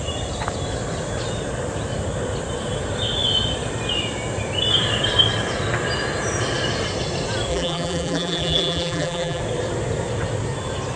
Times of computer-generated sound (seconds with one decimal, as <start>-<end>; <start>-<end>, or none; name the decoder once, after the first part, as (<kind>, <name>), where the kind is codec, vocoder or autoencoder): 7.5-9.4 (vocoder, BigVGAN v2)